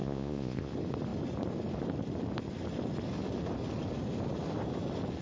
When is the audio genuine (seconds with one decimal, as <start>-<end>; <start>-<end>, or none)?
0.7-5.2